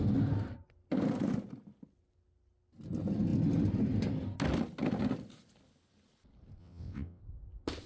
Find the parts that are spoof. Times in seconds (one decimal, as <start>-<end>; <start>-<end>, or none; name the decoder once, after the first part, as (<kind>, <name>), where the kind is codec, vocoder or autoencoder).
6.6-7.2 (vocoder, WaveNeXt)